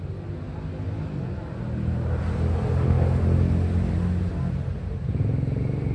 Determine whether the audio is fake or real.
real